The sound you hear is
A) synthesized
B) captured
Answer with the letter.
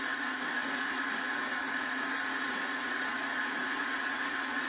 A